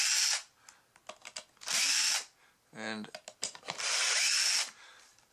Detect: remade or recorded recorded